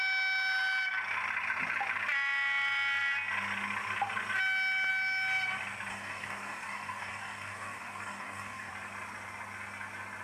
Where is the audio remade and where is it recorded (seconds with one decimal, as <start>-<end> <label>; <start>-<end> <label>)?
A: 0.0-5.9 recorded; 5.9-8.7 remade; 8.7-10.2 recorded